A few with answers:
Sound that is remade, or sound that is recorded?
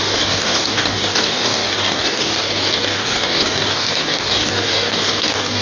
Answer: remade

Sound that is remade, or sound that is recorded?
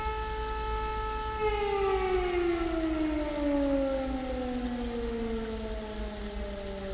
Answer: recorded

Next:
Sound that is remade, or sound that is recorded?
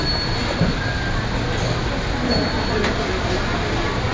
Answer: recorded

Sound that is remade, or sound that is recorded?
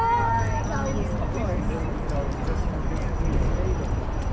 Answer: recorded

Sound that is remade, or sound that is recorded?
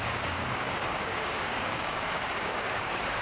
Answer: remade